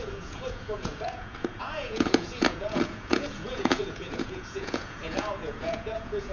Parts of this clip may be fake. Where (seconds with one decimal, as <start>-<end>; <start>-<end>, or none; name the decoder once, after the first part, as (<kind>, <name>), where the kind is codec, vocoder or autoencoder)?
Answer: 0.0-6.3 (vocoder, Vocos)